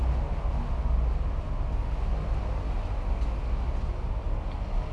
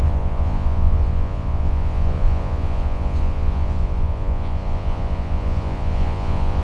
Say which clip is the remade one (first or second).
second